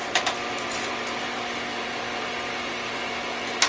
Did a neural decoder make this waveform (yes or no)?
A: no